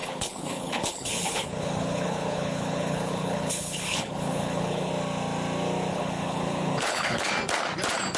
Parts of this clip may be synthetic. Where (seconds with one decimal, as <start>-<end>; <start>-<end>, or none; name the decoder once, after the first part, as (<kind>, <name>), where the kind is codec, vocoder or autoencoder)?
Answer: 0.0-4.9 (codec, HILCodec); 5.9-7.3